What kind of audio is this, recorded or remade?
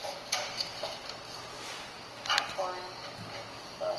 recorded